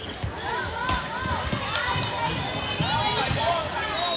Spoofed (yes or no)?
no